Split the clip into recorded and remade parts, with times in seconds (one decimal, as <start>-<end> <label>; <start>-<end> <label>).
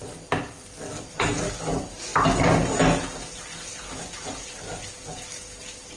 0.0-6.0 recorded